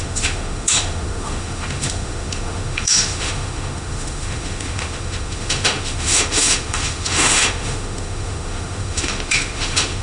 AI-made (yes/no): yes